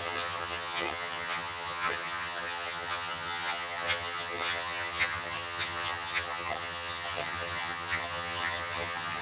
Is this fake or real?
fake